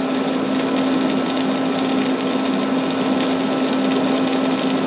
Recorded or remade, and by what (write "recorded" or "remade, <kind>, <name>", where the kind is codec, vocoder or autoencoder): recorded